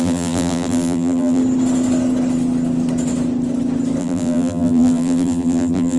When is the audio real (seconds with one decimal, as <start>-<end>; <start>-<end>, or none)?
1.4-4.0